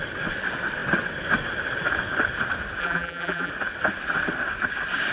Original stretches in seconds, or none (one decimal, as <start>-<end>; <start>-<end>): 0.0-2.8; 3.5-5.1